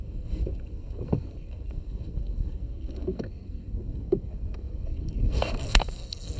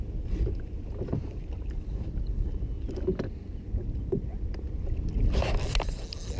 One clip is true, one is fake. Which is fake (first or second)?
first